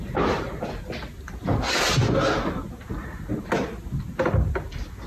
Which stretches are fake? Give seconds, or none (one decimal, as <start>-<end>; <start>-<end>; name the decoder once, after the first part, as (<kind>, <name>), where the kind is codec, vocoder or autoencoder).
none